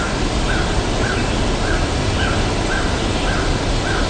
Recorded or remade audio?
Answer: recorded